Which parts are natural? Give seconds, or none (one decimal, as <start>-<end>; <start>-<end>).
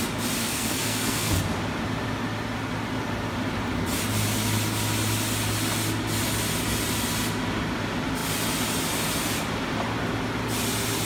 0.0-0.4; 1.4-11.1